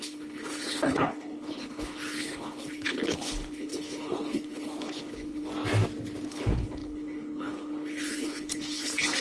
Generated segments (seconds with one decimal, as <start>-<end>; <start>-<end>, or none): 0.0-5.5; 6.3-9.2